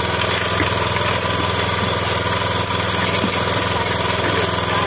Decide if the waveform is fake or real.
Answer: real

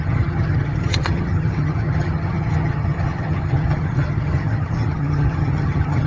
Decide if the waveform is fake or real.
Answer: fake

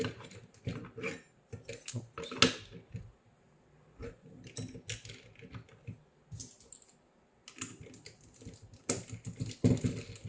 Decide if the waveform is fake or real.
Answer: real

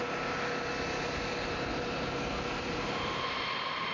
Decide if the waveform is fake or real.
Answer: real